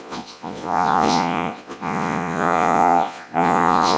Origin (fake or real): fake